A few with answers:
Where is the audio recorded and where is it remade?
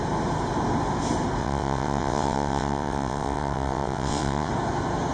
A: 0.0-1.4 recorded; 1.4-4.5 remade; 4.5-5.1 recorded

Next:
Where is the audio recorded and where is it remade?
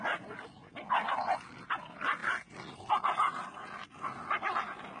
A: 0.0-5.0 recorded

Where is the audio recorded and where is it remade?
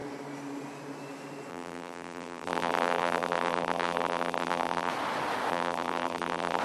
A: 0.0-1.5 recorded; 1.5-4.9 remade; 4.9-5.5 recorded; 5.5-6.6 remade